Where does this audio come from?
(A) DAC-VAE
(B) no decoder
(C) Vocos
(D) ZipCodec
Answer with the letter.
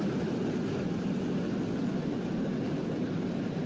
B